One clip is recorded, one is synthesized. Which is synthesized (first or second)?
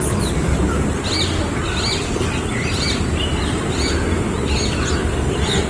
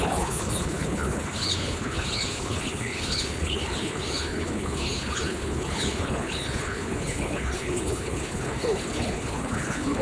second